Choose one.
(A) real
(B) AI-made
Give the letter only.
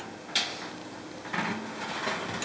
A